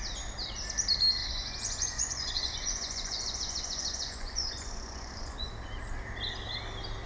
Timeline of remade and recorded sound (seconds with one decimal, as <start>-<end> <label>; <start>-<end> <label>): 0.0-1.2 recorded; 1.2-5.5 remade; 5.5-7.1 recorded